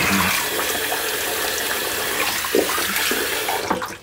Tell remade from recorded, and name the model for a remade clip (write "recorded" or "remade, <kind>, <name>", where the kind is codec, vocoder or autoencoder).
recorded